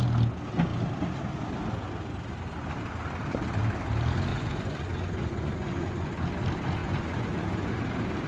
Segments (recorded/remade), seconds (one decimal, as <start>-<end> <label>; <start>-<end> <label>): 0.0-4.3 recorded; 4.3-6.1 remade; 6.1-6.8 recorded; 6.8-7.8 remade; 7.8-8.3 recorded